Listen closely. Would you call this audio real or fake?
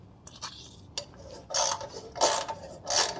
real